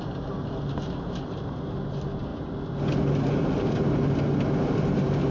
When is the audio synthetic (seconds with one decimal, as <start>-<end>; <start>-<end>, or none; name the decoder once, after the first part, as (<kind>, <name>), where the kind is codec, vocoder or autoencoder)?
none